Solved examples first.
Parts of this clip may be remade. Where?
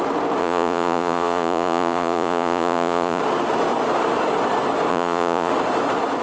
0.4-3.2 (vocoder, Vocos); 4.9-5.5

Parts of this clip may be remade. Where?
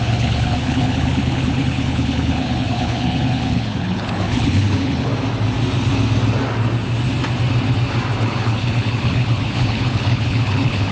0.0-5.1 (codec, HILCodec); 8.2-10.9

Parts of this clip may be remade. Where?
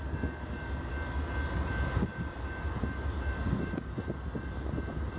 2.1-4.4 (vocoder, BigVGAN v2)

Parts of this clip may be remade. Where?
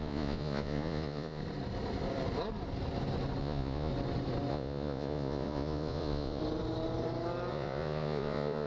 0.0-1.4 (vocoder, Vocos); 3.4-3.9; 4.5-6.4; 7.5-8.7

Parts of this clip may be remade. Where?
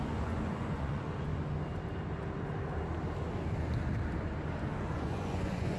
0.0-1.3 (vocoder, Vocos); 4.8-5.8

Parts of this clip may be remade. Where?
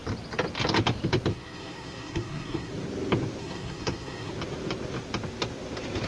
1.3-2.7 (codec, SNAC); 3.4-4.3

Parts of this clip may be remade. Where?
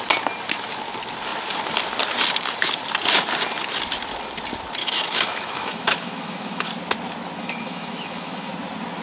4.8-6.7 (autoencoder, DAC-VAE); 7.4-8.5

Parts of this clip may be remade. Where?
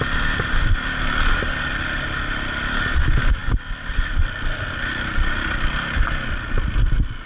none